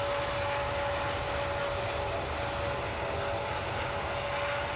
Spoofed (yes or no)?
no